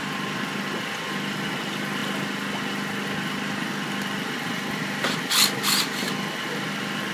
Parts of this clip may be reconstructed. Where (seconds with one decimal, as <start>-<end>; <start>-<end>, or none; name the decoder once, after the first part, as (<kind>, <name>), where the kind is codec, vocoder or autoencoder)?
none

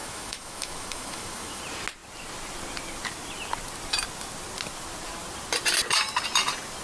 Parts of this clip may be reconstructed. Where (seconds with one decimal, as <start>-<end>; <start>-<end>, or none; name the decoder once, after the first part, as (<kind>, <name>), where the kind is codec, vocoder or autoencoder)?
0.0-1.6 (autoencoder, DAC-VAE)

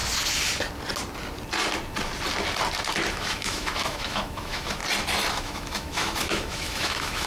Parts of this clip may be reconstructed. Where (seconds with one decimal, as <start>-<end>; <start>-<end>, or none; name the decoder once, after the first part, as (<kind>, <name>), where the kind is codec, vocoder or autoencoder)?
3.1-4.8 (autoencoder, DAC-VAE); 5.3-7.3

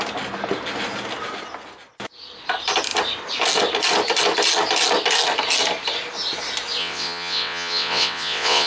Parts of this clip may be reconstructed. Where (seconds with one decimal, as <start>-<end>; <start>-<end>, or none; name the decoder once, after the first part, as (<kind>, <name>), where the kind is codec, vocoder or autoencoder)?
6.8-8.7 (vocoder, WaveNeXt)